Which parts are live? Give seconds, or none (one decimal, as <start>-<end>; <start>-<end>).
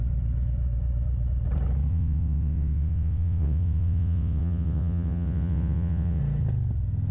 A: 0.0-1.9; 6.2-7.1